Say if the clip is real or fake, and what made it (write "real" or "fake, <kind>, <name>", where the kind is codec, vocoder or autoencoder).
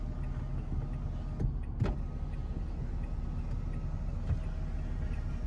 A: real